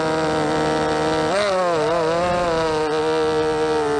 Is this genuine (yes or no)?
yes